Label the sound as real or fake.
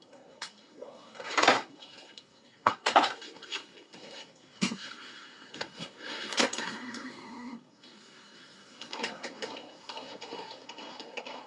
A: fake